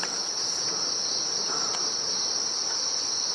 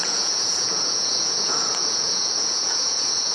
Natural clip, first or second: first